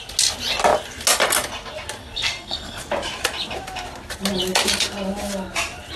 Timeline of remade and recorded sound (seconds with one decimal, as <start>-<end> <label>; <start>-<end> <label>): 0.0-2.0 recorded; 2.0-2.8 remade; 2.8-6.0 recorded